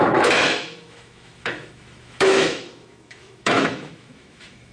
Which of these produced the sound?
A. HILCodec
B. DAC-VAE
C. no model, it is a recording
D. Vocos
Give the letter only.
B